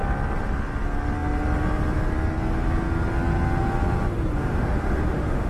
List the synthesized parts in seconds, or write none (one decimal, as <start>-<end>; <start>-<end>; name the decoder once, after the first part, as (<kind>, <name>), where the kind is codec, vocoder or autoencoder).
4.5-5.5 (autoencoder, DAC-VAE)